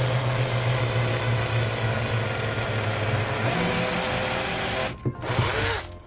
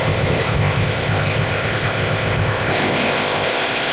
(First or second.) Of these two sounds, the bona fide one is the first